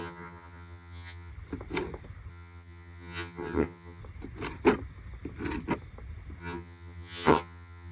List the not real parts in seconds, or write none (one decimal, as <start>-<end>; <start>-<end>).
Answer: 0.0-1.3; 2.3-4.0; 6.4-7.9